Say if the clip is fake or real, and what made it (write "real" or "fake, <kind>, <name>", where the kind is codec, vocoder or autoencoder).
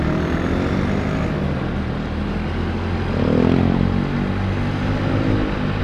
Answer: real